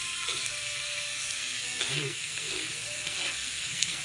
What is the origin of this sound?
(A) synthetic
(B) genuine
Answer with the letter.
A